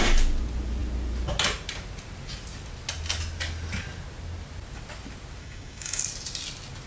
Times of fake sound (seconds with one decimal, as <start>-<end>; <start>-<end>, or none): 5.4-6.0